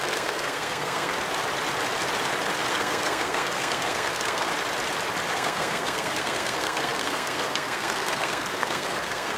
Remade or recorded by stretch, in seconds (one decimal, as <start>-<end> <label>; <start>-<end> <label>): 0.0-1.1 remade; 1.1-2.7 recorded; 2.7-4.5 remade; 4.5-5.3 recorded; 5.3-9.4 remade

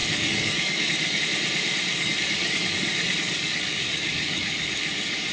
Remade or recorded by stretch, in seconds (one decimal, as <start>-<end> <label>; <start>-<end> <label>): 0.0-1.2 remade; 1.2-1.9 recorded; 1.9-5.3 remade

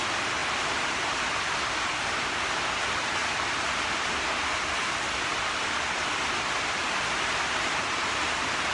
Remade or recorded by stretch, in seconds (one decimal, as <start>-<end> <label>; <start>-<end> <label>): 0.0-8.7 recorded

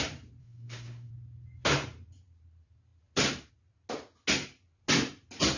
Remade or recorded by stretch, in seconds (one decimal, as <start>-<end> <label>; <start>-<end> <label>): 0.0-0.4 recorded; 0.4-1.1 remade; 1.1-5.6 recorded